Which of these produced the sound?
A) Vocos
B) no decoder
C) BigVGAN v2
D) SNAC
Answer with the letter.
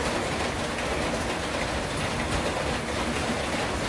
B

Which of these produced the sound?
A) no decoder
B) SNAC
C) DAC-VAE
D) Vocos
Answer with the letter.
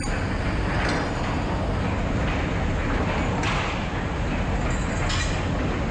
A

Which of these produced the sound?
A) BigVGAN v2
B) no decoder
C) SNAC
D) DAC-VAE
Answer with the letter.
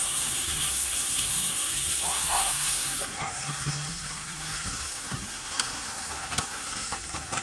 C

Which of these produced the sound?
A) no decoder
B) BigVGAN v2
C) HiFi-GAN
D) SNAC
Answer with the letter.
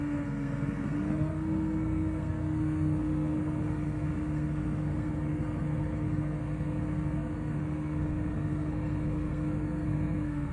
D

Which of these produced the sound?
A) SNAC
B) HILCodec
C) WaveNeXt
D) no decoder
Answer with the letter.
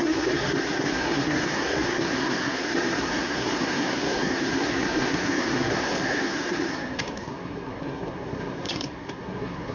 A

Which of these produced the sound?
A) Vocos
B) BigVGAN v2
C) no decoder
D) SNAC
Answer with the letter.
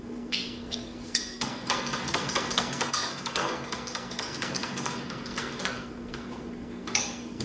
D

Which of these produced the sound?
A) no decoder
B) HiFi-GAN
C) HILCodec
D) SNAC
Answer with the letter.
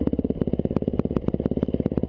A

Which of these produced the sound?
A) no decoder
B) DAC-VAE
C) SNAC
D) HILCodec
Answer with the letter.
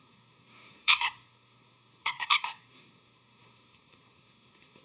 C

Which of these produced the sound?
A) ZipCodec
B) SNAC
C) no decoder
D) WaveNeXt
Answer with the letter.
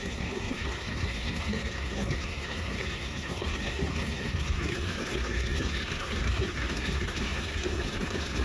B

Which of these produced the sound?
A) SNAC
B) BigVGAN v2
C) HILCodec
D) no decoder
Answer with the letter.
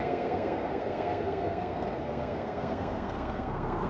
A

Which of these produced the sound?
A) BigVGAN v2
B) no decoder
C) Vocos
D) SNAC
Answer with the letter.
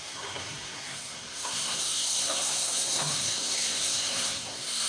D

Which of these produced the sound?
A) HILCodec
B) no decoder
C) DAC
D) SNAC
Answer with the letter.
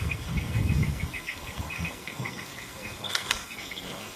D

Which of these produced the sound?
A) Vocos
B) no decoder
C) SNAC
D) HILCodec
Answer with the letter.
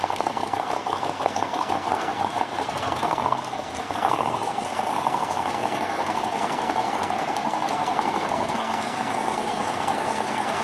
C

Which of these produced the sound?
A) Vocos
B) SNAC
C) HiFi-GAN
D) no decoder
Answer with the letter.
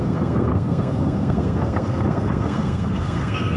B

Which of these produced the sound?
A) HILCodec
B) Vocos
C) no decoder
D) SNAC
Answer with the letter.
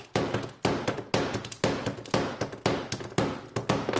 C